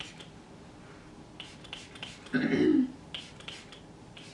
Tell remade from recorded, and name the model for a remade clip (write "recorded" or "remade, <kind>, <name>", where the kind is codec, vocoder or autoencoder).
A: recorded